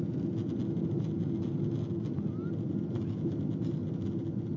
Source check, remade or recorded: recorded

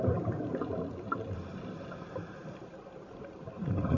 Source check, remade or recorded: recorded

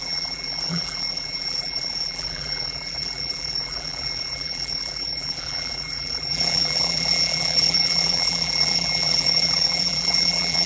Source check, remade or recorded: remade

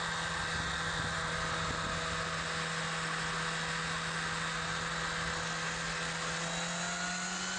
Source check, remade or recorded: recorded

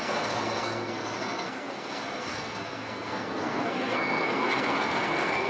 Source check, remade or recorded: remade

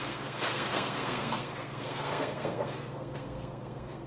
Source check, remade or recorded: remade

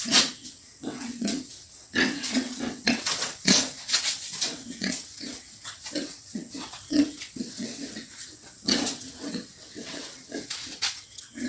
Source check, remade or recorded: remade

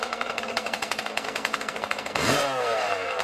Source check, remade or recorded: remade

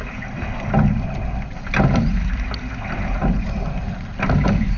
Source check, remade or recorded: recorded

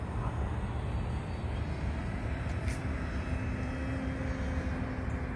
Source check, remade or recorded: recorded